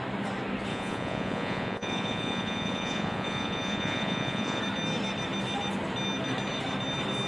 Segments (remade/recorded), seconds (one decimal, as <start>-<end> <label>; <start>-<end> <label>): 0.0-0.7 recorded; 0.7-4.6 remade; 4.6-7.3 recorded